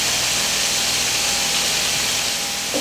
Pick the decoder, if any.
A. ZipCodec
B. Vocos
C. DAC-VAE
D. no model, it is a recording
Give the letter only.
D